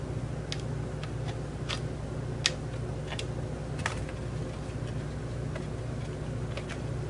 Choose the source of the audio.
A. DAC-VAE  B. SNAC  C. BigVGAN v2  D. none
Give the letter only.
D